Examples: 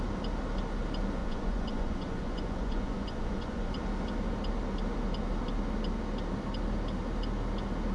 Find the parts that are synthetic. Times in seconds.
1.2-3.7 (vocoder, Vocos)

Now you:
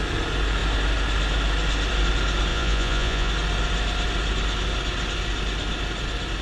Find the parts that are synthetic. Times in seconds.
2.5-3.3 (vocoder, Vocos)